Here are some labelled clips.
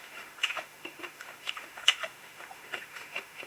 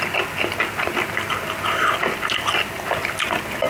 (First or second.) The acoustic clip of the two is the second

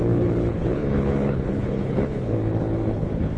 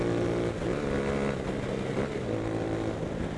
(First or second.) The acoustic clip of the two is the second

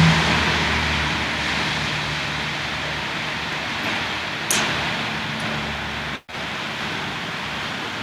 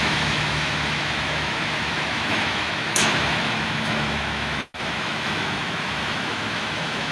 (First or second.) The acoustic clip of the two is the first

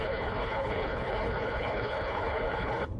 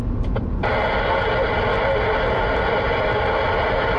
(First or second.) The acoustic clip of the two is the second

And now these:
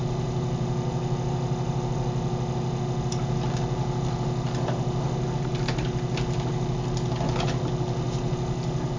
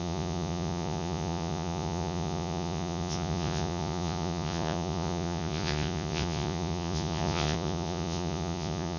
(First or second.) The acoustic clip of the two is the first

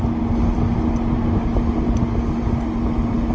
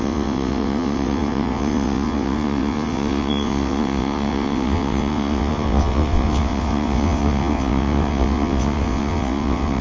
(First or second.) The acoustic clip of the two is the first